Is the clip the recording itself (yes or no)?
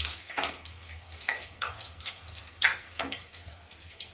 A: no